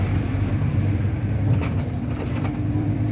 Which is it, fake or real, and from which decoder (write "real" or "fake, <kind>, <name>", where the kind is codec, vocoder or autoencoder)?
fake, vocoder, BigVGAN v2